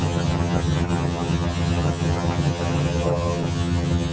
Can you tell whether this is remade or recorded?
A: remade